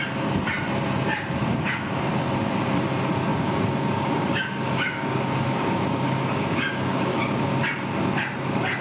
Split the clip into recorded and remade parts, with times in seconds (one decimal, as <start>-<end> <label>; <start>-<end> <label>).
0.0-1.5 recorded; 1.5-2.1 remade; 2.1-3.3 recorded; 3.3-7.5 remade; 7.5-8.8 recorded